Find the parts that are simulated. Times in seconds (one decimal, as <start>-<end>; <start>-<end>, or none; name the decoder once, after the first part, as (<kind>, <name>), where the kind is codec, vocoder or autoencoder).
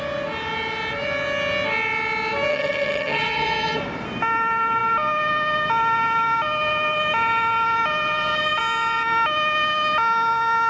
2.5-3.8 (vocoder, HiFi-GAN)